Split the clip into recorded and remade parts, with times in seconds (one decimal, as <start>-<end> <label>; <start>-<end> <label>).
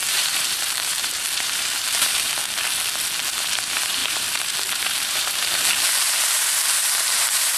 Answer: 0.0-2.4 remade; 2.4-3.4 recorded; 3.4-7.6 remade